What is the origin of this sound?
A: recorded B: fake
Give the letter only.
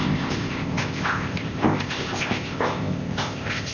B